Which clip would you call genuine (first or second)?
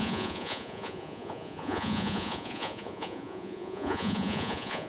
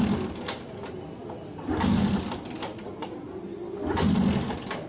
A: second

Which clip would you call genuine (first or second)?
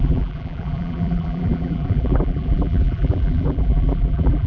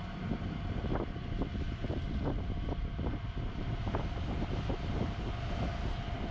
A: second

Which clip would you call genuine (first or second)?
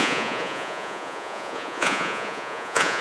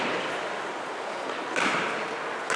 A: second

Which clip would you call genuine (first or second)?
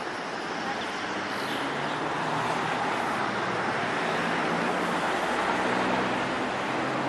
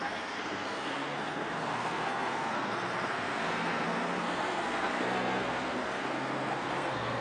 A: first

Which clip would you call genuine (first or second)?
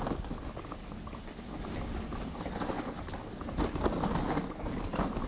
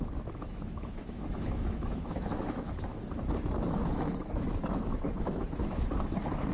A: first